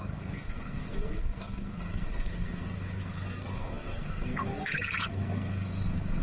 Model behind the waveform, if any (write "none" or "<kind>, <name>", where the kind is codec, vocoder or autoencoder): codec, SNAC